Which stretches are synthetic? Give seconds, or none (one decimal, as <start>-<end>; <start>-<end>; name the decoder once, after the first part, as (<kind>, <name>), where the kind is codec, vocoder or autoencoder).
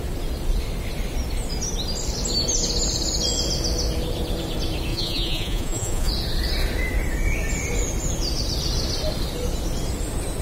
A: 4.9-6.1 (vocoder, Vocos)